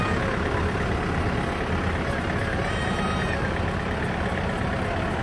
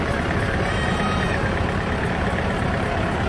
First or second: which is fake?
second